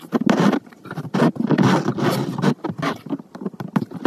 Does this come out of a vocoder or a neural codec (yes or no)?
no